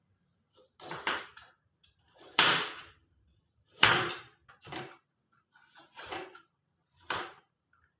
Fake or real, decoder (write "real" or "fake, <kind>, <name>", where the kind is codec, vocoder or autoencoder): fake, vocoder, BigVGAN v2